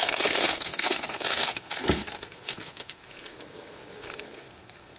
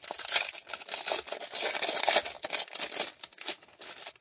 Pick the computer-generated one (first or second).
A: first